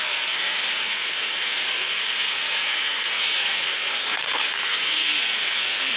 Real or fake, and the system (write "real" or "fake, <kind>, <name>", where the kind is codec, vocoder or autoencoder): fake, codec, SNAC